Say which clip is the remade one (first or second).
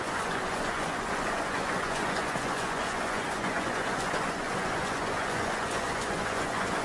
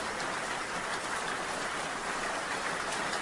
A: first